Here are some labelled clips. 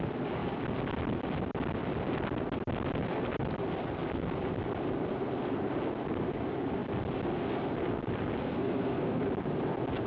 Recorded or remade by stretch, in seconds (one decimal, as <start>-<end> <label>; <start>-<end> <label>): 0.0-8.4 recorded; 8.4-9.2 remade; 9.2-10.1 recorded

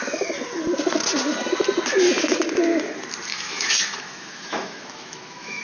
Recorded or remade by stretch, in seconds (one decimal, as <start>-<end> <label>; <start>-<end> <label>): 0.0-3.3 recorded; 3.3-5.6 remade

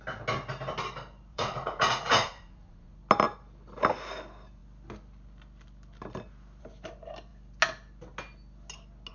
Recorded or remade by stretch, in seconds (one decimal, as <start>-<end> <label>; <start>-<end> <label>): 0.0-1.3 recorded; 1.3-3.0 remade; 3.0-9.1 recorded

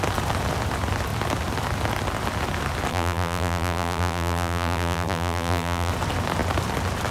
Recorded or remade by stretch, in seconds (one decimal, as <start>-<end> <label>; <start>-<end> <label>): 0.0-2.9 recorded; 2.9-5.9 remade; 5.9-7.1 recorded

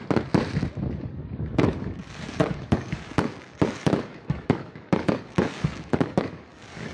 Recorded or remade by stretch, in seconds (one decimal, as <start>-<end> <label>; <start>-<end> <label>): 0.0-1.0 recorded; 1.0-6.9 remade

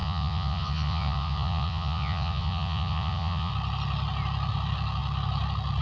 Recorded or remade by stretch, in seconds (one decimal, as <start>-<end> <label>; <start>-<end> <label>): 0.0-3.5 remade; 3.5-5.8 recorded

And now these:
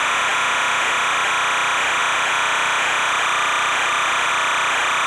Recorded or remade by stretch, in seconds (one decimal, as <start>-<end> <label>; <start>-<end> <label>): 0.0-0.9 remade; 0.9-2.0 recorded; 2.0-4.3 remade; 4.3-5.1 recorded

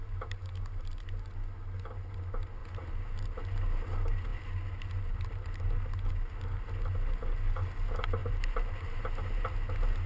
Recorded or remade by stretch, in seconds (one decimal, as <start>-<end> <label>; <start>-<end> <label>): 0.0-2.6 recorded; 2.6-3.2 remade; 3.2-8.2 recorded; 8.2-9.0 remade; 9.0-10.1 recorded